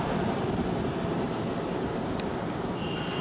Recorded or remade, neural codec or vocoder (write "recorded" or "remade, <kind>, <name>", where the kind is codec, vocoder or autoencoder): recorded